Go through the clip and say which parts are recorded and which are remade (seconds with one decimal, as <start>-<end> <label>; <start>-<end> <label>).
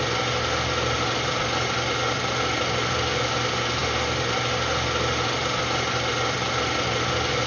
0.0-7.5 recorded